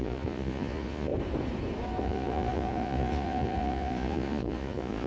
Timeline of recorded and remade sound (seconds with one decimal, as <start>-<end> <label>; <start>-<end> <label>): 0.0-1.1 remade; 1.1-2.0 recorded; 2.0-5.1 remade